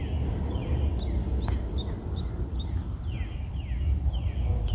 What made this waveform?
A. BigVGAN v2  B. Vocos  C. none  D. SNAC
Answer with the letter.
C